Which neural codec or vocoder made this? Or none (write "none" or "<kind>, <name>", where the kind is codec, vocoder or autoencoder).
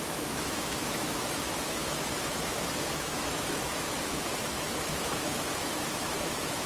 autoencoder, DAC-VAE